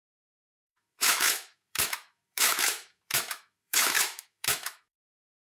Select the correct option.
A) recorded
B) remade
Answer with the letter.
B